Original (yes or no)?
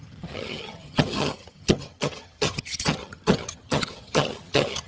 no